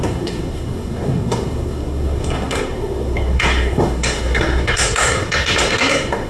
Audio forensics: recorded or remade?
remade